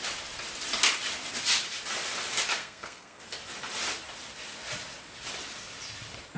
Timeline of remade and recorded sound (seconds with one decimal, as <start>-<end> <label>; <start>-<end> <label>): 0.0-2.6 recorded; 2.6-3.2 remade; 3.2-6.4 recorded